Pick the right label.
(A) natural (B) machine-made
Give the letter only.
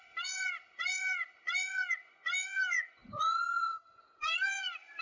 B